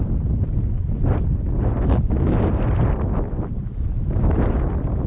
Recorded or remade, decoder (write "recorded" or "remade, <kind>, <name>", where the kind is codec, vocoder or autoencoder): recorded